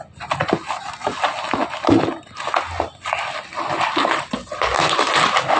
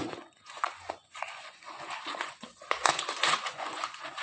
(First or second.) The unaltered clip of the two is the first